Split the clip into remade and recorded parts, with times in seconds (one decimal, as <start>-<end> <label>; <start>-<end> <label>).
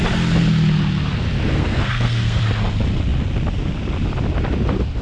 0.0-1.5 recorded; 1.5-2.4 remade; 2.4-5.0 recorded